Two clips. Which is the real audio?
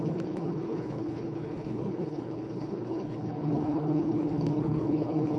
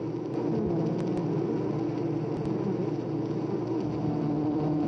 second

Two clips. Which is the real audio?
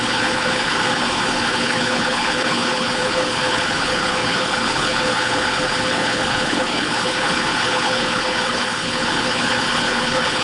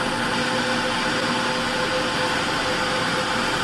second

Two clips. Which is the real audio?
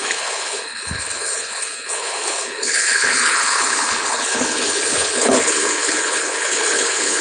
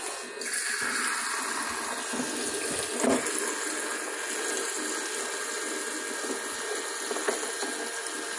second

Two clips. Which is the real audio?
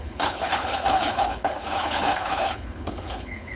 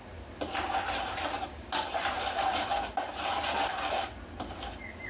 second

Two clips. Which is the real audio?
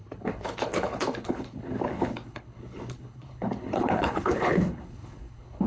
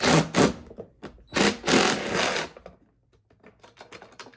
second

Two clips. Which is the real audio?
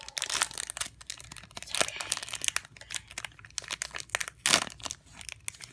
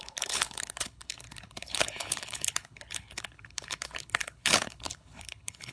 first